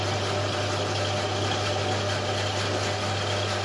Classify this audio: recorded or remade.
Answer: recorded